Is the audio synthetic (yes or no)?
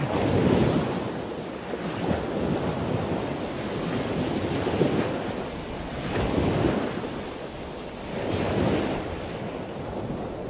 no